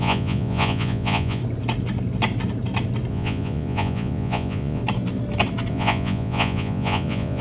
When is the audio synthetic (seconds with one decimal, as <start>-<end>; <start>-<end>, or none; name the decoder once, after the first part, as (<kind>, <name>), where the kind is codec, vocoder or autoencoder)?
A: 0.0-1.4 (vocoder, Vocos); 3.1-4.8; 5.7-7.4